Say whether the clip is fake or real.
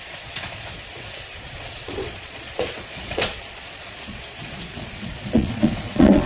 fake